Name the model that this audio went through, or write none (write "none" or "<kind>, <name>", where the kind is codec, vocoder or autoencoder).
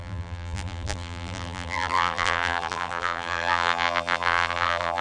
vocoder, BigVGAN v2